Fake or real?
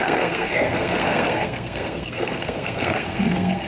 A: fake